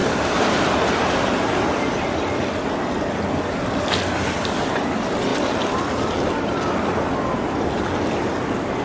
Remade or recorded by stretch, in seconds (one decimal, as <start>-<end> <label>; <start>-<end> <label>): 0.0-8.8 recorded